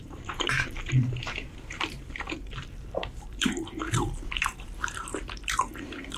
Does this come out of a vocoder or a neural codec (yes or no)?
yes